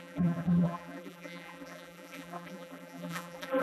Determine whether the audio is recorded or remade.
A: remade